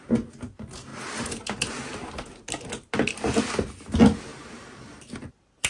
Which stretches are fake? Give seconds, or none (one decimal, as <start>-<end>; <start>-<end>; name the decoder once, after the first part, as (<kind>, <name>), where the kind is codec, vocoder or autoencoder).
0.9-1.7 (vocoder, BigVGAN v2); 4.3-5.1